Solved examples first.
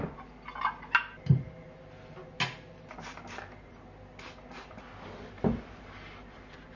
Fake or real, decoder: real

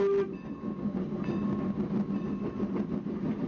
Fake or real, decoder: real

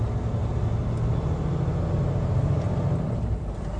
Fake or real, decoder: real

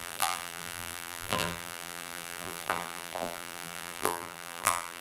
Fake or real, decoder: fake, vocoder, BigVGAN v2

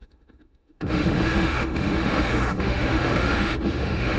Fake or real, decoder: fake, autoencoder, DAC-VAE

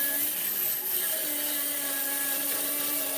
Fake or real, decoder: real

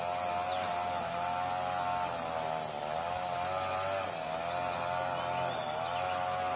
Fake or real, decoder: real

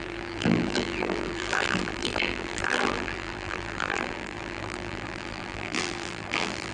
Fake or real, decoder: fake, vocoder, BigVGAN v2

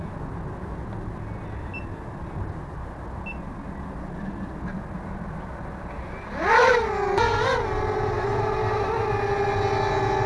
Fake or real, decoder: real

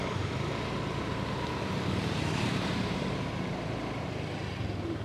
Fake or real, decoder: fake, vocoder, BigVGAN v2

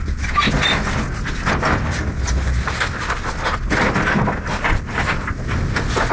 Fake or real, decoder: real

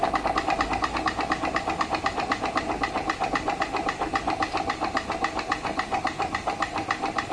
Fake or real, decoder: real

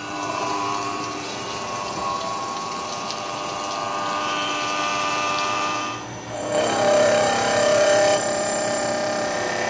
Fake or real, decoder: fake, vocoder, BigVGAN v2